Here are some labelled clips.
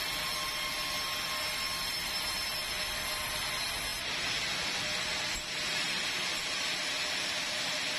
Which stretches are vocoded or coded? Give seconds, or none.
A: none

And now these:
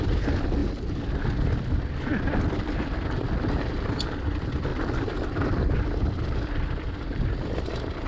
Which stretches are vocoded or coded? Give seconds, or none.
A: none

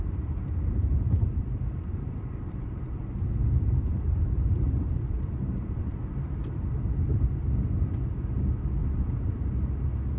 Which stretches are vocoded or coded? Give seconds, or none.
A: 0.0-3.0 (vocoder, BigVGAN v2); 3.9-7.3; 8.8-9.5

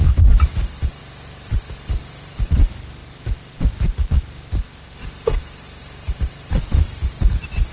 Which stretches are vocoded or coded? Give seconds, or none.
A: 0.0-1.0 (vocoder, BigVGAN v2); 1.6-7.7

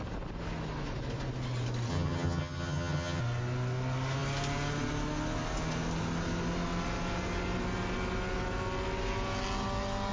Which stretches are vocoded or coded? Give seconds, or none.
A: 1.9-3.2 (vocoder, HiFi-GAN)

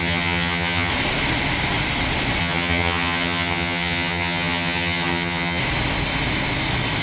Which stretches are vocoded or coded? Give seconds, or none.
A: 0.0-0.9 (vocoder, HiFi-GAN); 2.4-5.6